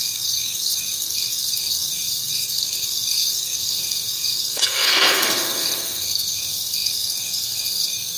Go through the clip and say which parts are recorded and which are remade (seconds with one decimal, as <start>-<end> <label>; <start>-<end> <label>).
0.0-8.2 remade